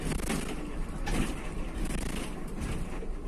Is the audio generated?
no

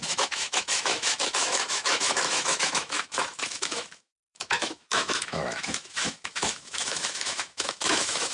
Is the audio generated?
yes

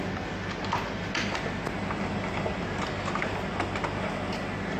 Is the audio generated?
no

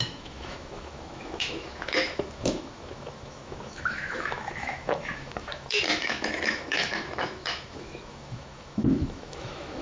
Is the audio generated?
yes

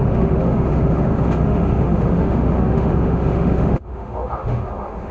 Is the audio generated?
yes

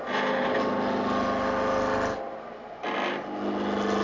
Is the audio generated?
no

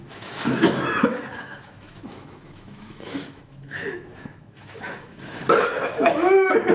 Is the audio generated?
yes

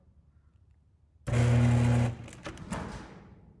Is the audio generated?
no